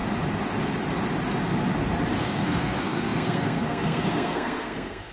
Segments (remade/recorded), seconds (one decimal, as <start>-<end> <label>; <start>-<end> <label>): 0.0-2.2 recorded; 2.2-5.1 remade